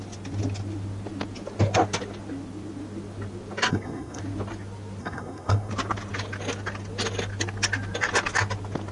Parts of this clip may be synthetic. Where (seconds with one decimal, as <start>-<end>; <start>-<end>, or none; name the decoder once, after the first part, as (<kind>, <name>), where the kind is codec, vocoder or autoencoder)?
3.7-4.2 (codec, SNAC); 5.0-5.7